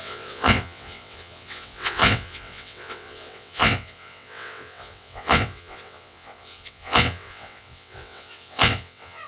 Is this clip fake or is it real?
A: fake